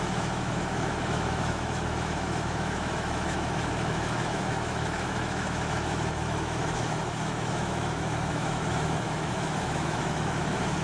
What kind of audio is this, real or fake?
fake